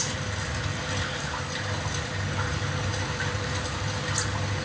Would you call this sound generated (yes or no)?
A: no